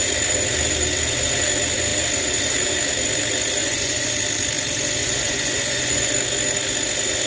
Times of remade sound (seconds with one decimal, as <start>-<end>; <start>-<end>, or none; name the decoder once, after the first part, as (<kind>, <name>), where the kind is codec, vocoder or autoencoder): 3.6-4.1 (vocoder, Vocos); 5.0-6.1